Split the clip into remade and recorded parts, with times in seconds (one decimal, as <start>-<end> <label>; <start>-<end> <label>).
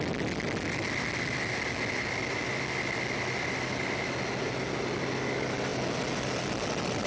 0.0-7.1 recorded